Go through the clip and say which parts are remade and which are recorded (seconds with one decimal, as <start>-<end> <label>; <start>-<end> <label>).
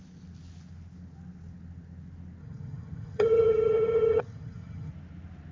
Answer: 0.0-2.4 recorded; 2.4-4.9 remade; 4.9-5.5 recorded